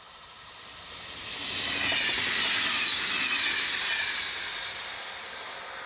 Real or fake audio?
real